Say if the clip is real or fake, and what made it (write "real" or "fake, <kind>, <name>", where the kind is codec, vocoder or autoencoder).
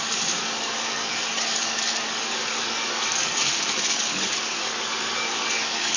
fake, codec, DAC